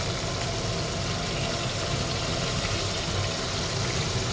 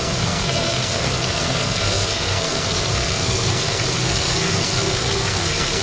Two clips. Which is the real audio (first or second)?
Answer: first